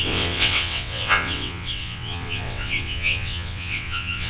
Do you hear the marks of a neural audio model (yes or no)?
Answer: yes